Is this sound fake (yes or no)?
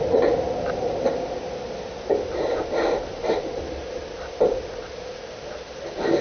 no